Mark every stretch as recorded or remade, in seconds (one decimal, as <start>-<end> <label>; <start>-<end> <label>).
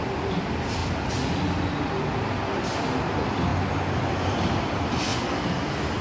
0.0-0.8 remade; 0.8-3.0 recorded; 3.0-3.5 remade; 3.5-4.0 recorded; 4.0-5.1 remade; 5.1-6.0 recorded